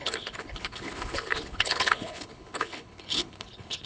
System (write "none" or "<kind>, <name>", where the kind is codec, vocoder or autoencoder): codec, HILCodec